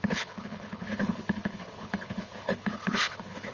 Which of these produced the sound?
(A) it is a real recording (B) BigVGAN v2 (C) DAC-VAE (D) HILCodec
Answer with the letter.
D